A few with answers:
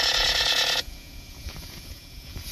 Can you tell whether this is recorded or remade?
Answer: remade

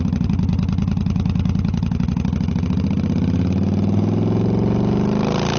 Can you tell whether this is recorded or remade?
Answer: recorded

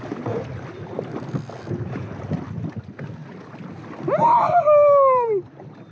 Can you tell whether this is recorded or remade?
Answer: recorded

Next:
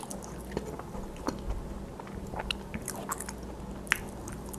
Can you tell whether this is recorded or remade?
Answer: recorded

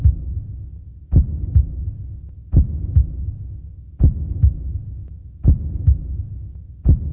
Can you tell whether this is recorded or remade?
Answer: recorded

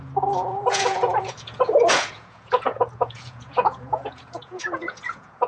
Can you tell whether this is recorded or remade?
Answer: remade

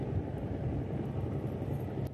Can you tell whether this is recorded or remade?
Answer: remade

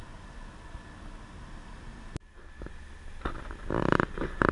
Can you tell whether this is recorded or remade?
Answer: recorded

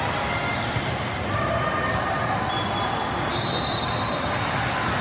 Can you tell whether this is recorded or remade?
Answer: recorded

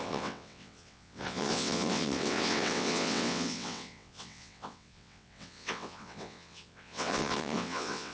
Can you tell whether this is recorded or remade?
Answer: remade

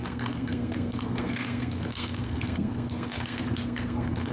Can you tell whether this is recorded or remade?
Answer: remade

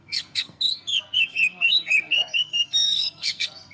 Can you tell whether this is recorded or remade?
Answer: remade